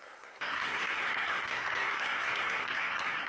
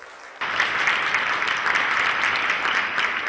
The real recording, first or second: second